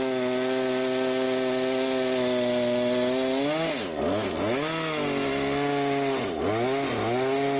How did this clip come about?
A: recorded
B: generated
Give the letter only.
A